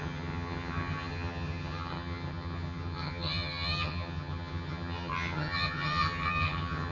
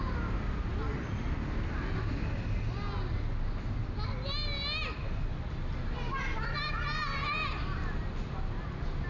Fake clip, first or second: first